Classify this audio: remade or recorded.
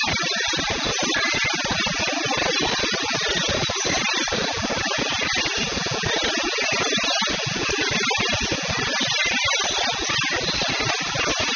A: recorded